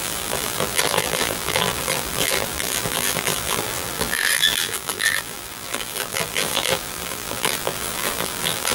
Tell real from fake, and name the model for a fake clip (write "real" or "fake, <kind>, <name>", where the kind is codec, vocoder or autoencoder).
fake, vocoder, BigVGAN v2